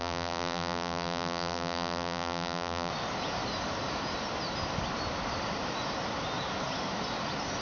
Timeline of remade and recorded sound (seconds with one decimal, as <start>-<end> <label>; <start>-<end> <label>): 0.0-2.9 remade; 2.9-7.6 recorded